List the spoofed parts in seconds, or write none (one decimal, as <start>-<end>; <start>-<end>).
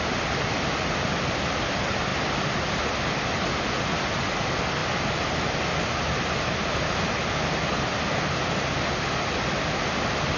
none